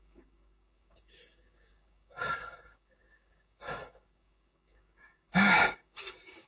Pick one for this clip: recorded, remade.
remade